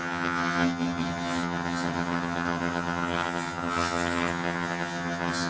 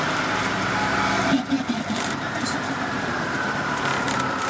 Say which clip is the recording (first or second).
second